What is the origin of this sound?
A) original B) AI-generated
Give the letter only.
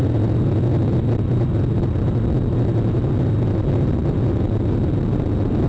A